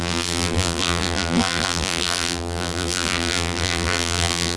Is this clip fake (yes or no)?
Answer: yes